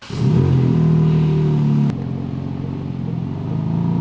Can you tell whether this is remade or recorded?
recorded